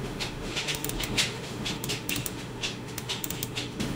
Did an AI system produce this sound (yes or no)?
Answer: yes